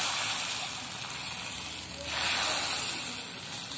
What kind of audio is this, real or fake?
real